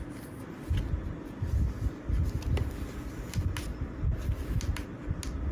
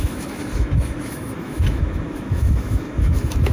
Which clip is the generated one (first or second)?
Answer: second